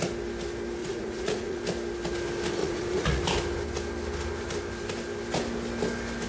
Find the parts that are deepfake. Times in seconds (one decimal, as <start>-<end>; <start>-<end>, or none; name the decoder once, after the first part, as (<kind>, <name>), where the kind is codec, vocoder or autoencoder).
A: 0.8-1.6 (vocoder, Vocos); 2.6-3.2